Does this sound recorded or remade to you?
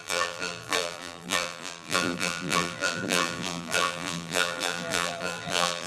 remade